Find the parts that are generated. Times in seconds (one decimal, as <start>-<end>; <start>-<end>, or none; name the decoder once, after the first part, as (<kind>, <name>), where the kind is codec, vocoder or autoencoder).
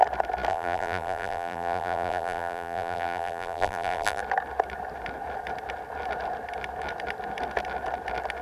0.5-4.2 (vocoder, BigVGAN v2)